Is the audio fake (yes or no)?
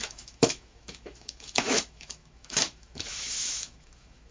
yes